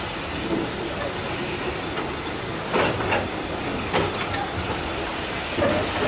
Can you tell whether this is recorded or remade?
recorded